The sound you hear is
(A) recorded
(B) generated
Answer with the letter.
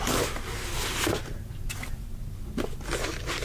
A